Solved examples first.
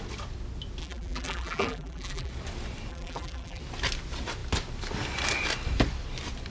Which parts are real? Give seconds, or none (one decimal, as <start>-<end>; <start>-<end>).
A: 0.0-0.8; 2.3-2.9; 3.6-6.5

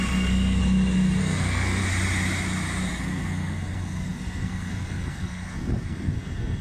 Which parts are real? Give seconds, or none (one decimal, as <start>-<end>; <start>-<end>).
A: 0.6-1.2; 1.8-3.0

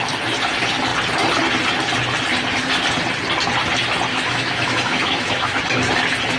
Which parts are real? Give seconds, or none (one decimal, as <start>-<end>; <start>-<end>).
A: 0.0-4.1; 5.6-6.4